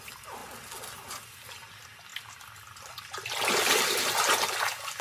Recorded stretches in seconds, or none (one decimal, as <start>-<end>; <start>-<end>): 0.0-5.0